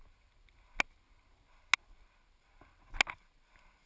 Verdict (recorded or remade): recorded